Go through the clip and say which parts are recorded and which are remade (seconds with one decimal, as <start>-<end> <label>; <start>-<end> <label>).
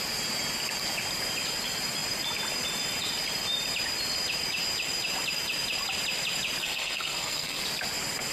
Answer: 0.0-6.6 recorded; 6.6-7.6 remade; 7.6-8.3 recorded